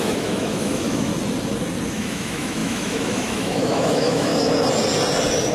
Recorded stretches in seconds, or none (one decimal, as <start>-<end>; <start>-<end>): 1.1-1.9; 4.3-5.5

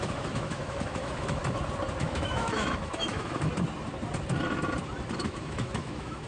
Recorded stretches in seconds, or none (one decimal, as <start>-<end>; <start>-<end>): 1.4-2.0; 3.5-5.2